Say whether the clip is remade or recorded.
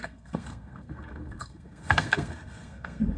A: remade